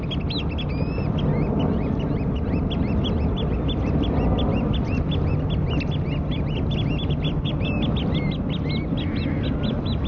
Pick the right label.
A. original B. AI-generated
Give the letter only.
A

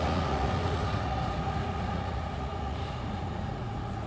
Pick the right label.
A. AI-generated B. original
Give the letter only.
A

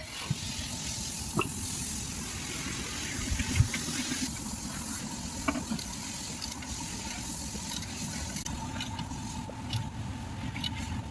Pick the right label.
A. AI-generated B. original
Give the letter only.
B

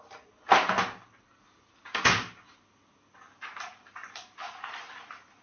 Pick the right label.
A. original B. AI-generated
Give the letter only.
A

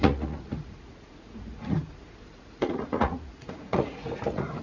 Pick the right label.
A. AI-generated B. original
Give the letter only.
A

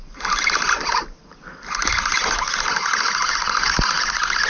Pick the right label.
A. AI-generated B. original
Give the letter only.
B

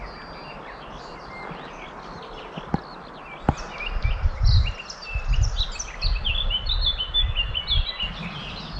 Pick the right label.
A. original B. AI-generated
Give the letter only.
A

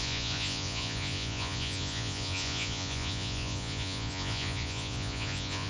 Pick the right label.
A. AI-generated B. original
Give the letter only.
A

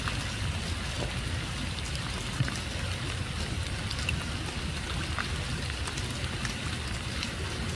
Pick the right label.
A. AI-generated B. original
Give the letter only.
B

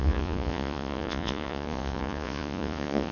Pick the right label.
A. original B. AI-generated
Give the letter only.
B